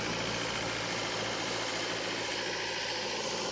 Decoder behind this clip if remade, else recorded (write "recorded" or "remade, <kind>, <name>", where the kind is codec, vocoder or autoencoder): recorded